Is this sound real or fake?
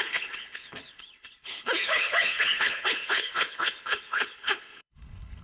fake